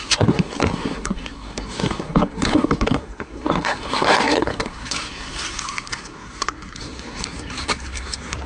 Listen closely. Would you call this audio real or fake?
fake